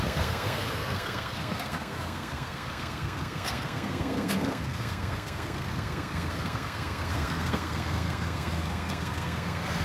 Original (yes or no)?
no